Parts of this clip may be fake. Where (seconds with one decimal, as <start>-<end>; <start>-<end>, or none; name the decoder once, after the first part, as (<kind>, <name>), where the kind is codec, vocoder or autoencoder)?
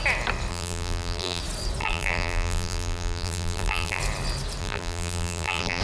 0.5-1.4 (vocoder, BigVGAN v2); 1.8-4.0; 4.6-5.8